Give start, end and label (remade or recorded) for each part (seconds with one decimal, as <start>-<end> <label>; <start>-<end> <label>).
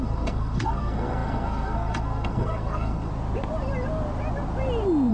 0.0-3.1 remade; 3.1-5.1 recorded